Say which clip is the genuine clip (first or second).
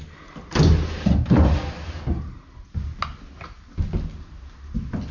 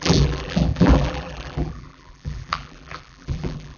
first